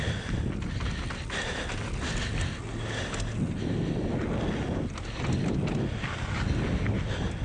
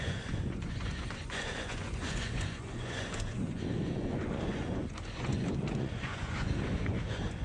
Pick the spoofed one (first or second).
second